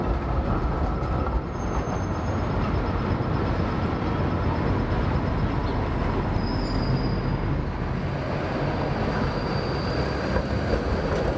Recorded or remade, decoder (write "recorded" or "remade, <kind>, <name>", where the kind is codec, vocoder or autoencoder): recorded